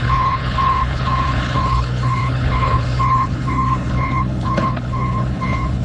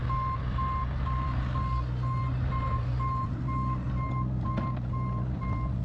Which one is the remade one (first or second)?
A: first